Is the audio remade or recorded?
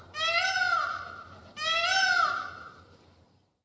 remade